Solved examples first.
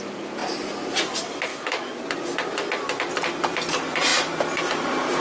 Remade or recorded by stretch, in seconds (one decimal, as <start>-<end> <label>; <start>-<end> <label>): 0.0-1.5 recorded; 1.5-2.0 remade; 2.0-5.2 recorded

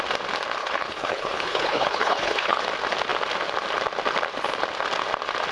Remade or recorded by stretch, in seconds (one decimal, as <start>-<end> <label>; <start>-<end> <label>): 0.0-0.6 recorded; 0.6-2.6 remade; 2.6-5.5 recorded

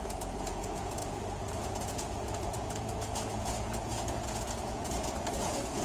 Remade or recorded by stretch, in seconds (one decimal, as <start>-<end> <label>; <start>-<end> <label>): 0.0-5.8 remade